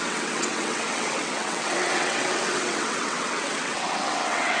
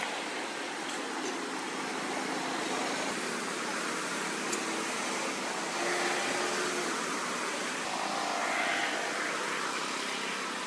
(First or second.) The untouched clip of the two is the second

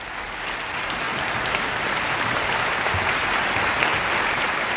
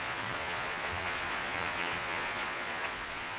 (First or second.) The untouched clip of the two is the first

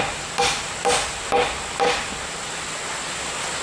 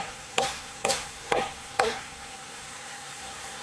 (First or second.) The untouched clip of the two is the first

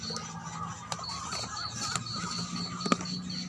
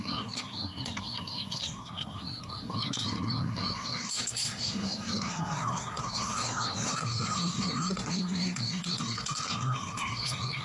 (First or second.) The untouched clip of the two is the first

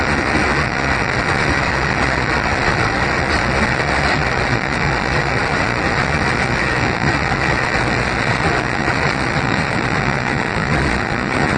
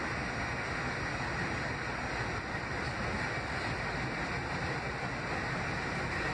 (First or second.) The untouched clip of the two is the second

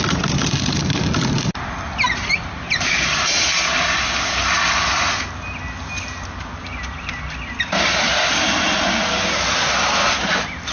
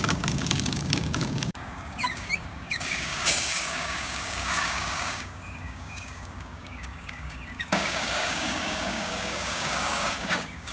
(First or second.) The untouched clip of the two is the first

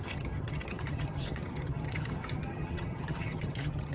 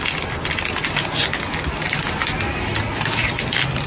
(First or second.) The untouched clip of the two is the second